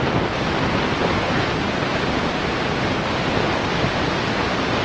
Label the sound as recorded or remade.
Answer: recorded